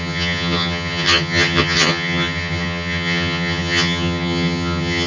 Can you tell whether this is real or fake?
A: fake